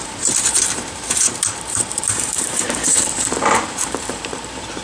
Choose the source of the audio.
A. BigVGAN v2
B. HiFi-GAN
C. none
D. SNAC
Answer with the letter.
A